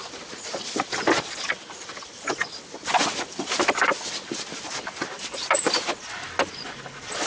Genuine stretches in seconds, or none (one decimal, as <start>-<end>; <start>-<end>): 0.0-7.3